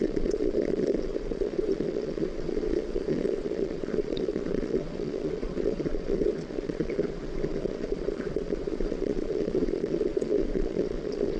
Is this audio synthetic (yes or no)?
yes